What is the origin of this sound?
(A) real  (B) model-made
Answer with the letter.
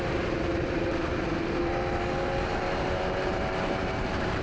B